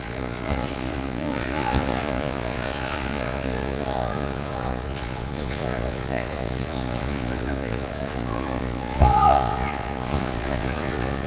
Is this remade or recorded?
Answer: remade